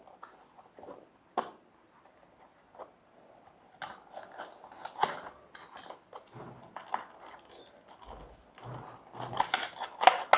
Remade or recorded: recorded